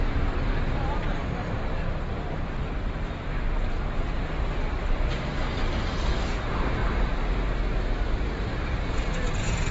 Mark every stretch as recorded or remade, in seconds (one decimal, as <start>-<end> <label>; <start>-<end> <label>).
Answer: 0.0-1.8 remade; 1.8-2.9 recorded; 2.9-6.8 remade; 6.8-7.8 recorded; 7.8-9.7 remade

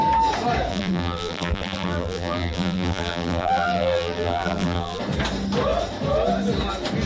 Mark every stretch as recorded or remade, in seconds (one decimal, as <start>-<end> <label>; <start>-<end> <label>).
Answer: 0.0-0.7 recorded; 0.7-5.0 remade; 5.0-7.1 recorded

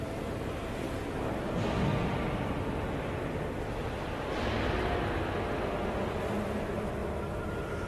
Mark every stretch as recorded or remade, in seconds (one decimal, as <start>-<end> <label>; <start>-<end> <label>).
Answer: 0.0-1.9 remade; 1.9-6.6 recorded; 6.6-7.0 remade; 7.0-7.5 recorded; 7.5-7.9 remade

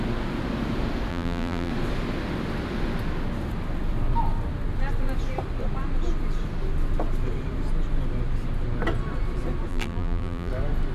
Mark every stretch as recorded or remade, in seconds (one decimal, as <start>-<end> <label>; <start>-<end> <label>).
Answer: 0.0-1.1 recorded; 1.1-1.7 remade; 1.7-9.7 recorded; 9.7-10.5 remade; 10.5-10.9 recorded